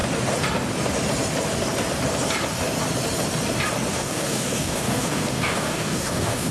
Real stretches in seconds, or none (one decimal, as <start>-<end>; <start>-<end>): 0.0-3.9